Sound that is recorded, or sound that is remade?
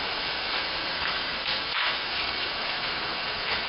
remade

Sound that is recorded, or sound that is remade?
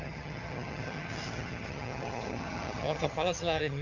remade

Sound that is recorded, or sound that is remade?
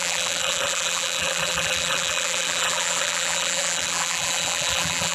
remade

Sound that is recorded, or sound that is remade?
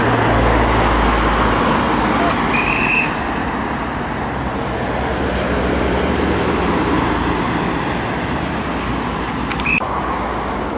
recorded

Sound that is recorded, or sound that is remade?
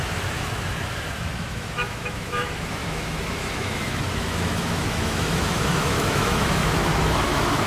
remade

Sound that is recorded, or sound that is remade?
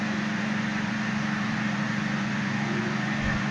remade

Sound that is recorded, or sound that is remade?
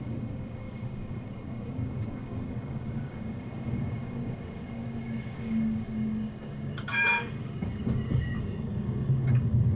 remade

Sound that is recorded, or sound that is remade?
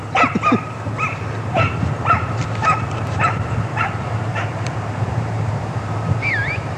remade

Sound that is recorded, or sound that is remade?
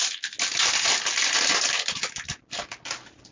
recorded